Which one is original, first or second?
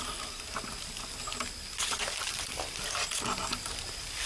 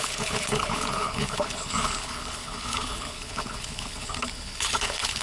first